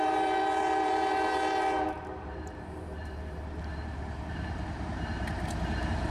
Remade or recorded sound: remade